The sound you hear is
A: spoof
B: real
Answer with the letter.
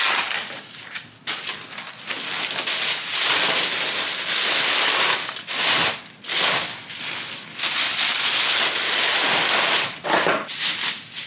B